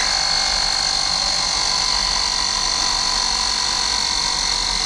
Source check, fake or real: real